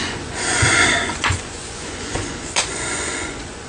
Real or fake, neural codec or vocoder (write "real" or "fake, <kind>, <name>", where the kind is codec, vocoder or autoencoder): fake, vocoder, Vocos